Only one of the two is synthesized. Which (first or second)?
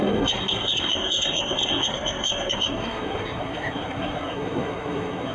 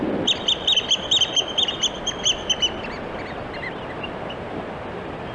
first